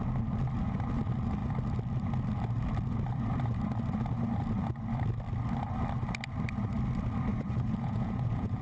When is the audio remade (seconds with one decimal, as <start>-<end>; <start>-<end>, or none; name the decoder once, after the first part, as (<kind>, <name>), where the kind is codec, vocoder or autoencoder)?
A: 7.3-8.6 (vocoder, Vocos)